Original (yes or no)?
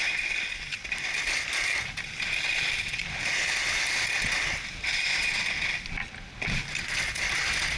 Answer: yes